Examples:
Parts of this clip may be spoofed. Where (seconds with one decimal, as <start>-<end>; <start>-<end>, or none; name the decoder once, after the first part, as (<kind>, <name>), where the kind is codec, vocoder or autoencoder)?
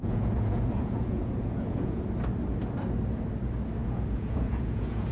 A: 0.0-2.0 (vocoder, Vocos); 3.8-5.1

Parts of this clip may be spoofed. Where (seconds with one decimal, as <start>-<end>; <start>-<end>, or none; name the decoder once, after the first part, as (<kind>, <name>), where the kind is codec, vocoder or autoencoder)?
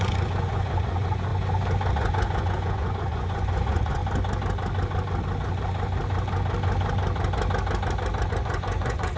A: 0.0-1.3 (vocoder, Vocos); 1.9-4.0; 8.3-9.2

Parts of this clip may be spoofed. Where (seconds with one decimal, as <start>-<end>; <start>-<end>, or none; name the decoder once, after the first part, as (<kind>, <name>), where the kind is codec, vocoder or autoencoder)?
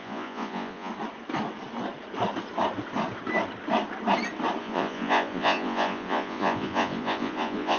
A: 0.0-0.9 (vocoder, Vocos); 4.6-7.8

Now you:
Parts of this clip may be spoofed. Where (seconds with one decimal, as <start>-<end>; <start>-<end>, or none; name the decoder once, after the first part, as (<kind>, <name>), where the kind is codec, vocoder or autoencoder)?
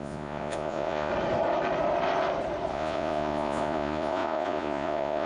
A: 0.0-1.1 (vocoder, Vocos); 2.7-5.3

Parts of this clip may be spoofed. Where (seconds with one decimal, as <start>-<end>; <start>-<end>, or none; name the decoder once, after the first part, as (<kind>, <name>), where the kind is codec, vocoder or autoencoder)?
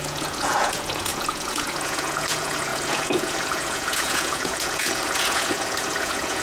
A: 0.0-6.4 (vocoder, Vocos)